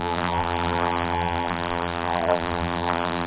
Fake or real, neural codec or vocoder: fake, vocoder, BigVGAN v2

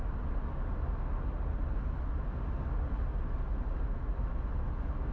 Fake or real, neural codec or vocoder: real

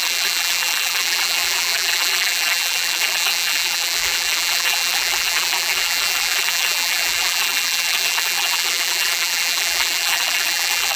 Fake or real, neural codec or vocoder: fake, vocoder, BigVGAN v2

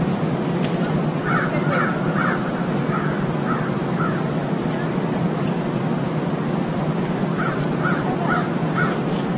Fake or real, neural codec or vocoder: fake, vocoder, BigVGAN v2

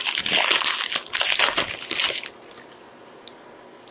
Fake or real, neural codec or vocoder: real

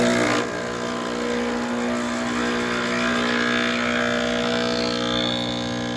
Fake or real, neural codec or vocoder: real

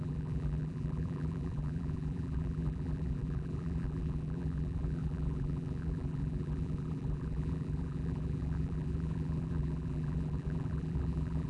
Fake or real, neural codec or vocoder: fake, vocoder, BigVGAN v2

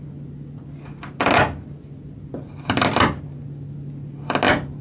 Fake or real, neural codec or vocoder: real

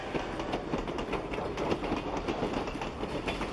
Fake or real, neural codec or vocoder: real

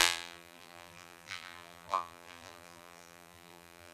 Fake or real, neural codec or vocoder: fake, vocoder, BigVGAN v2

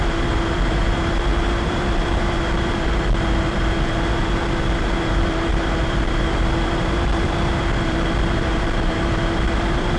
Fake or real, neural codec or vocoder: fake, vocoder, BigVGAN v2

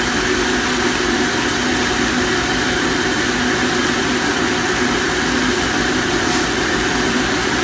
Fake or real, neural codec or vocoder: real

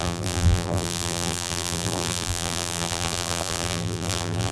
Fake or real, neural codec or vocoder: fake, vocoder, BigVGAN v2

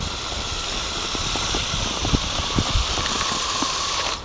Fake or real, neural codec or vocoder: fake, vocoder, BigVGAN v2